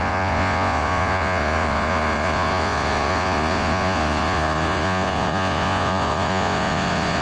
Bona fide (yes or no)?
no